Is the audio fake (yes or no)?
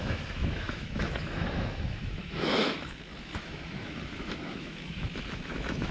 yes